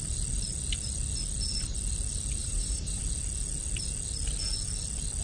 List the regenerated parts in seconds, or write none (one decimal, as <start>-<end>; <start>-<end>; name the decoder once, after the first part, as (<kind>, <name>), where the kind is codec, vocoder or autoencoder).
2.4-3.0 (vocoder, BigVGAN v2)